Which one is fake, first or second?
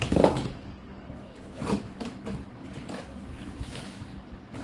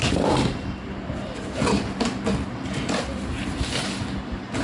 first